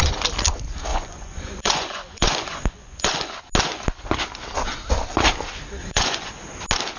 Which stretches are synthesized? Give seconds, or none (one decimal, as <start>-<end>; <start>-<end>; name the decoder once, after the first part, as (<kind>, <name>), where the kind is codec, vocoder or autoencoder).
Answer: 0.9-3.4 (vocoder, Vocos); 5.8-6.3